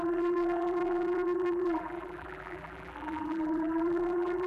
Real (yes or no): no